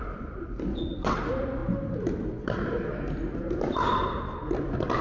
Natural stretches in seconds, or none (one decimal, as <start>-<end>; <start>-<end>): 0.0-0.7; 1.2-5.0